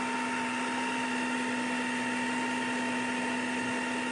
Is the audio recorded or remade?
recorded